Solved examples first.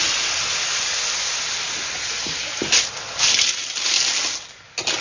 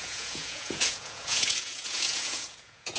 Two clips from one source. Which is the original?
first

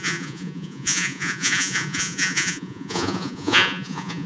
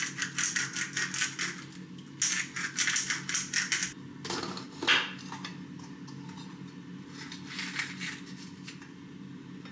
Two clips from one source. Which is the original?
second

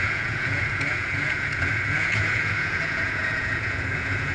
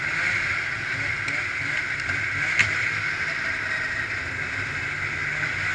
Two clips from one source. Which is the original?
second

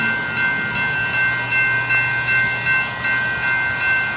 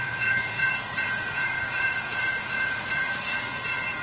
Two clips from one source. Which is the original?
first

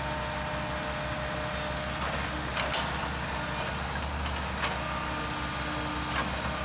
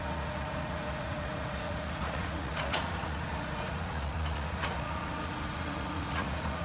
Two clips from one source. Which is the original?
first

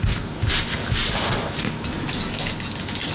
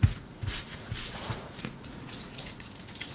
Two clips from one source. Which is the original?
first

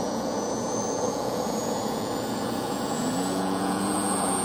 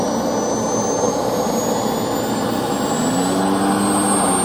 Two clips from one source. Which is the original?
second